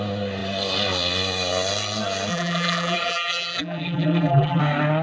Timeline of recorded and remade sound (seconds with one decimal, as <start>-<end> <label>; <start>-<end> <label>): 0.0-2.3 recorded; 2.3-4.6 remade; 4.6-5.0 recorded